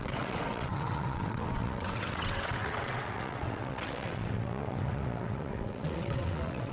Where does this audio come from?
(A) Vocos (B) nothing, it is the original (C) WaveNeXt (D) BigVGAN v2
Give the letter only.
C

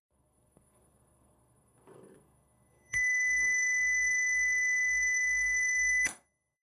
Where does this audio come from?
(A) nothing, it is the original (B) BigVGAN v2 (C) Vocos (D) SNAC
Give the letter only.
D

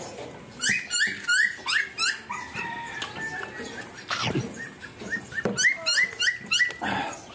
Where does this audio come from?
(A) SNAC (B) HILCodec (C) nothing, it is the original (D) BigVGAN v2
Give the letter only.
C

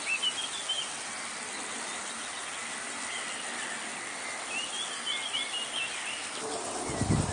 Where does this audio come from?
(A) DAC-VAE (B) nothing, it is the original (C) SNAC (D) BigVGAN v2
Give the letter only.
B